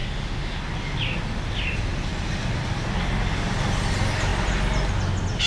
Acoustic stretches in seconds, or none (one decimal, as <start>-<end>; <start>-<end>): 0.6-5.5